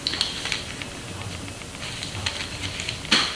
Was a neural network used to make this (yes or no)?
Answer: no